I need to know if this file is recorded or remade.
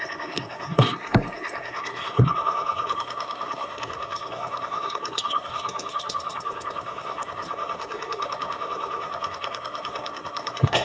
remade